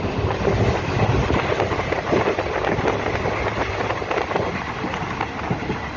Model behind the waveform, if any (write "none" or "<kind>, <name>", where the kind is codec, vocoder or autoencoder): none